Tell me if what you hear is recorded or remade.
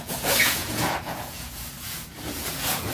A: remade